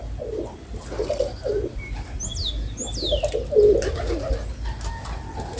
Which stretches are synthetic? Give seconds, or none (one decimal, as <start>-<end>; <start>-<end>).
none